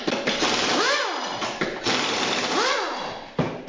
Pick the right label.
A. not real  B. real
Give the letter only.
B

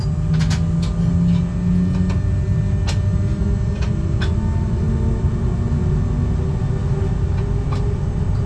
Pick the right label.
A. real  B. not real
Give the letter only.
A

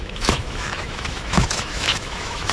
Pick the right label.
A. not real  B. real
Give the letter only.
A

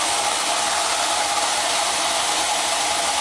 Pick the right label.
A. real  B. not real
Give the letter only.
A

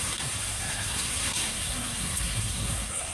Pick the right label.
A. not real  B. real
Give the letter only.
A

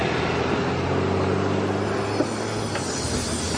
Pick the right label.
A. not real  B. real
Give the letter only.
B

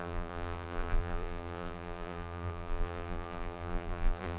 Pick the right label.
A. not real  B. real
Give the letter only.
A